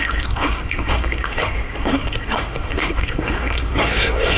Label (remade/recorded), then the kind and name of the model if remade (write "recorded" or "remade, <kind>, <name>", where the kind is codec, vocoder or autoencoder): remade, codec, SNAC